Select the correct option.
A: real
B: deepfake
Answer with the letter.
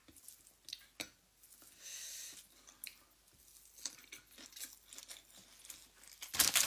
A